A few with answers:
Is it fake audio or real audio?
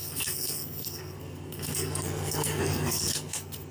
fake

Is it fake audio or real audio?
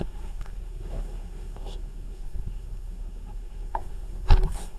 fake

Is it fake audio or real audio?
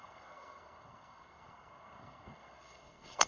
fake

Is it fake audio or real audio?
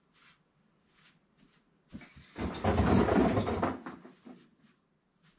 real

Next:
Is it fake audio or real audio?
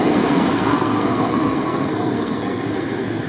fake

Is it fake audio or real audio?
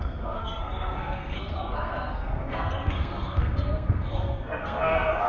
fake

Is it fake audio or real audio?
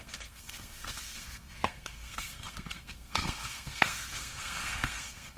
fake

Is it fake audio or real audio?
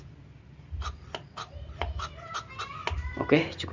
real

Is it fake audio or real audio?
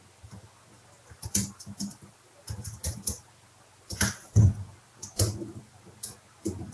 real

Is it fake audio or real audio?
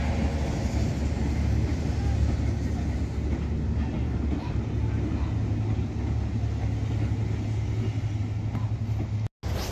real